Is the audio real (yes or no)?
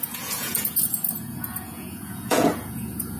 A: no